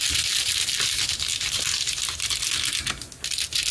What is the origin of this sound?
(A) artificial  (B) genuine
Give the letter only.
B